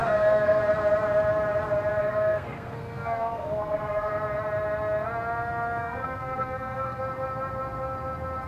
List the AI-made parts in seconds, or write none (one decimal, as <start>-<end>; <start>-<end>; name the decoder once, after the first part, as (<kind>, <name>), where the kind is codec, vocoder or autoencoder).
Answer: 0.0-0.6 (codec, SNAC); 1.9-4.1; 5.8-7.0